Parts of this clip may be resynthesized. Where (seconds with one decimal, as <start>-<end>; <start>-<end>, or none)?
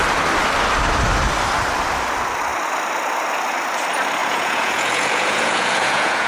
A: 4.2-6.3